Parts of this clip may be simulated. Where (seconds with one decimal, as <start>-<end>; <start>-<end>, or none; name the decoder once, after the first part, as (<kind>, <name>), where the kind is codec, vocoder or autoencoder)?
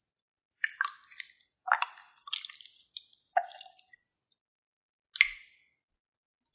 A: none